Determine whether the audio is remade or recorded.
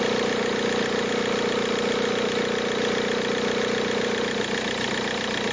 recorded